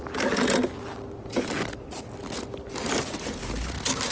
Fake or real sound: real